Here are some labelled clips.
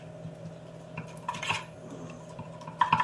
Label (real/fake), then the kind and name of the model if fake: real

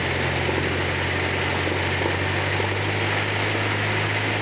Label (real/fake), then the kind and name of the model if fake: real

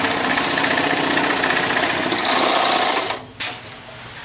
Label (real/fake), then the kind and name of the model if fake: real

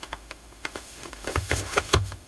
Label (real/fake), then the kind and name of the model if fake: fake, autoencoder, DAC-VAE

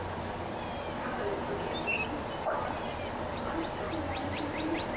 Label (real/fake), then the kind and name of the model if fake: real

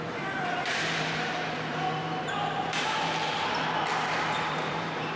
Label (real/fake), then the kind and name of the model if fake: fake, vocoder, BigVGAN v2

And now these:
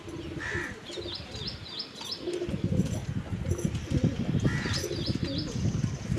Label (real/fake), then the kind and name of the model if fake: real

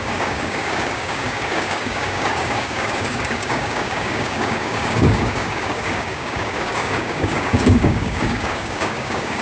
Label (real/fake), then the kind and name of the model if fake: fake, codec, DAC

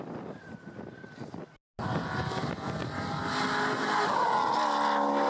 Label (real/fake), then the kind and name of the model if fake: real